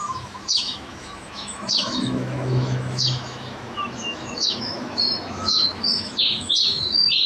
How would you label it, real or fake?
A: fake